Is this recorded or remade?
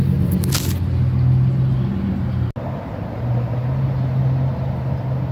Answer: recorded